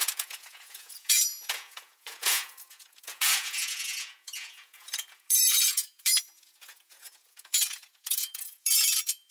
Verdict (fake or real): fake